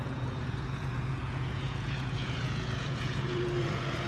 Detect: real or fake fake